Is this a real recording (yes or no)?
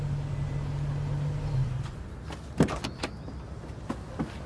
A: yes